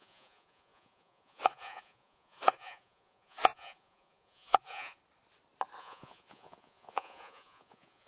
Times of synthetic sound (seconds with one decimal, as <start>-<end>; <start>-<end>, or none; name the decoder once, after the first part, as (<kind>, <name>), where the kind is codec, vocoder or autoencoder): 0.0-5.0 (vocoder, Vocos); 5.8-8.1